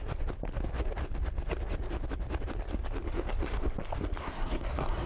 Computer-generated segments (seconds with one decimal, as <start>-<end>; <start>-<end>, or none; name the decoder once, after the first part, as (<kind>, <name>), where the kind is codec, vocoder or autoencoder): 4.2-5.1 (codec, SNAC)